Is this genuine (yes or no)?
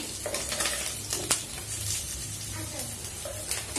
yes